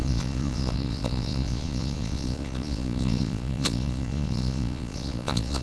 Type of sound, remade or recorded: remade